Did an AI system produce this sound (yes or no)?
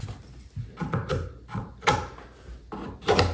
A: no